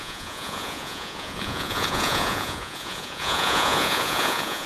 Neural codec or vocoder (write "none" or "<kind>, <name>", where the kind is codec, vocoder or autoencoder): vocoder, Vocos